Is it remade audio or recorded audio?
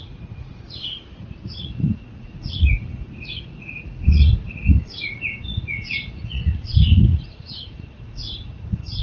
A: remade